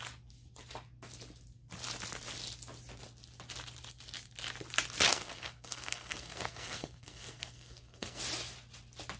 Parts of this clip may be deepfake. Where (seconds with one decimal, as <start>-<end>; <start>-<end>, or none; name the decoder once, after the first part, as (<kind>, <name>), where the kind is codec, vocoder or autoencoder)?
5.1-8.2 (codec, SNAC)